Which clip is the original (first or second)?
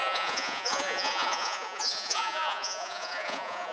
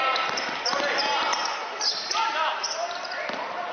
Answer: second